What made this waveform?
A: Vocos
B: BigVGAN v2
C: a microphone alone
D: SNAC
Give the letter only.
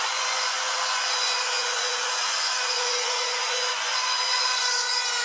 A